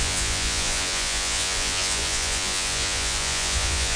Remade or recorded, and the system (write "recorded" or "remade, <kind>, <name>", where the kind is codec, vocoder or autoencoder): remade, vocoder, Vocos